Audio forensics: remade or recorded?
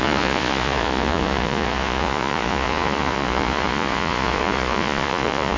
remade